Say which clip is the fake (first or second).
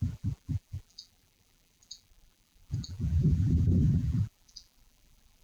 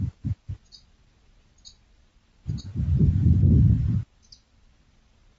first